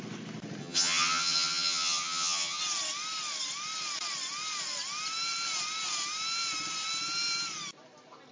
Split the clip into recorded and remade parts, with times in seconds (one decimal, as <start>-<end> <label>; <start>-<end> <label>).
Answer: 0.0-0.6 recorded; 0.6-2.6 remade; 2.6-8.3 recorded